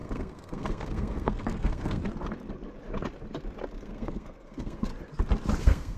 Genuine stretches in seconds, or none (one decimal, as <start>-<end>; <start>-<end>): 2.0-3.8; 4.9-5.6